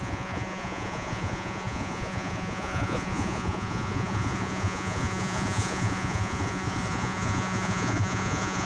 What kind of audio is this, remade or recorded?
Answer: remade